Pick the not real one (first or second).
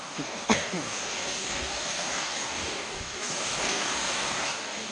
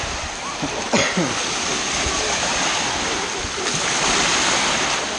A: first